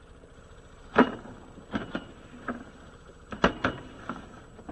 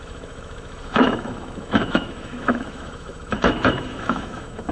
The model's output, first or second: second